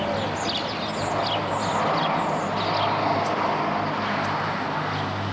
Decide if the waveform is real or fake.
real